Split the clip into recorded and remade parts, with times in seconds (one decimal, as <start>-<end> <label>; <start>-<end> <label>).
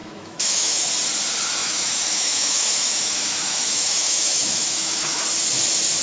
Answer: 0.0-0.9 remade; 0.9-1.6 recorded; 1.6-5.2 remade; 5.2-6.0 recorded